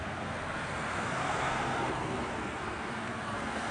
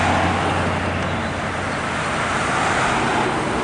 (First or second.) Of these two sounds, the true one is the second